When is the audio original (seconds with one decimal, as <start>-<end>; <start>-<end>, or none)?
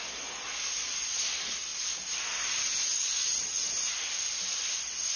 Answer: 0.0-5.2